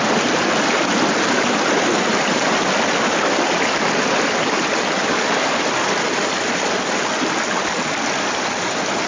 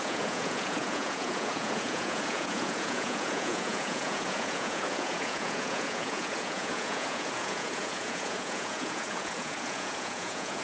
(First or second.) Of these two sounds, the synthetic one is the second